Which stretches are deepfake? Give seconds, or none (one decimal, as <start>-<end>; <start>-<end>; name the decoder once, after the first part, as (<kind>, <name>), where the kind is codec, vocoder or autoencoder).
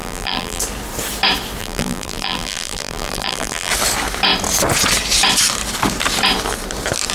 0.0-0.6 (vocoder, BigVGAN v2); 1.6-3.7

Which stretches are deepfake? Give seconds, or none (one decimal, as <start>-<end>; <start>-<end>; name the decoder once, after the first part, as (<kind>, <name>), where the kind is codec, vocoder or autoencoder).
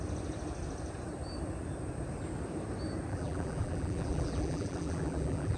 3.1-5.6 (vocoder, BigVGAN v2)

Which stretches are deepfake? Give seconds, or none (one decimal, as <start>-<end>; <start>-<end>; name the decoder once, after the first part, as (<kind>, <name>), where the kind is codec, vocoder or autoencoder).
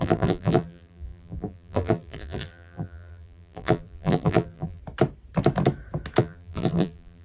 0.0-4.8 (vocoder, BigVGAN v2); 6.2-7.2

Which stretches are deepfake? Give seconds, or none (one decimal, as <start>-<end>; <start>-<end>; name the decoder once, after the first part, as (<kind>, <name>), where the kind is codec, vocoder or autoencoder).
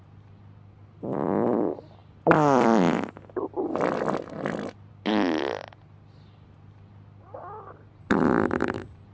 none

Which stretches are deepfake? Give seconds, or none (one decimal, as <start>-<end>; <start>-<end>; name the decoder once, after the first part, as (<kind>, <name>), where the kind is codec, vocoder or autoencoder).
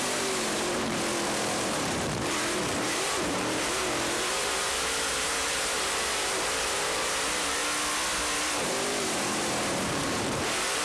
0.0-7.6 (vocoder, BigVGAN v2); 8.5-10.8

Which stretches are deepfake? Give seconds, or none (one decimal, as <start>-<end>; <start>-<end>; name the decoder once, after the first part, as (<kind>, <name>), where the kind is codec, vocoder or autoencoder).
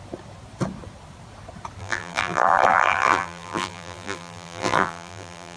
1.8-5.6 (vocoder, BigVGAN v2)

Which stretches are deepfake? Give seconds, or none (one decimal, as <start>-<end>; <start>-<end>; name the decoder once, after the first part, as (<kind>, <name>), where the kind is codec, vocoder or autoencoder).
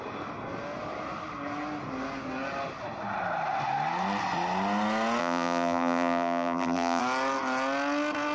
5.2-7.0 (vocoder, BigVGAN v2)